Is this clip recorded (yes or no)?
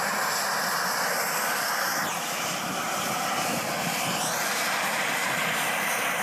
yes